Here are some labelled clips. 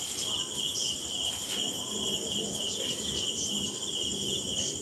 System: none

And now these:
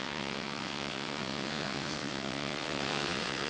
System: vocoder, WaveNeXt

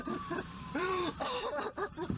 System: vocoder, BigVGAN v2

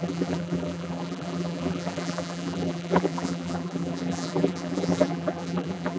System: vocoder, BigVGAN v2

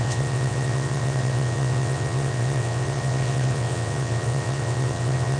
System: vocoder, WaveNeXt